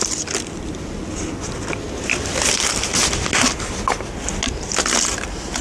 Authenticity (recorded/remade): recorded